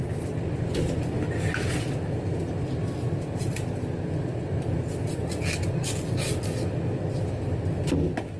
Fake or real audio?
real